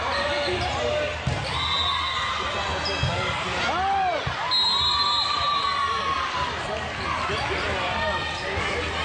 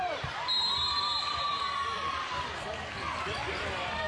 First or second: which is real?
first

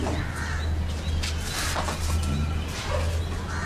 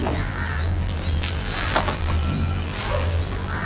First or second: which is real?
first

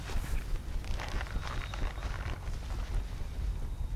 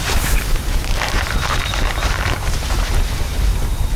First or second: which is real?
first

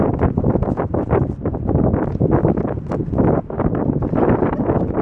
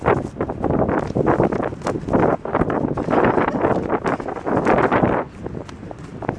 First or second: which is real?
second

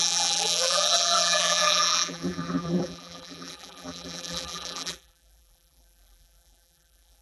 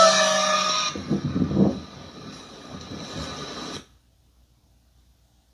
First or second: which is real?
second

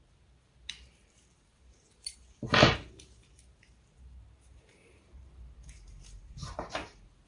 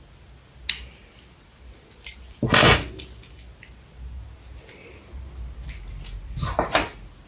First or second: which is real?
second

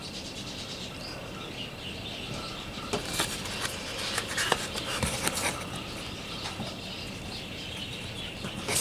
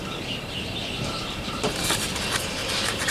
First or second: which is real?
first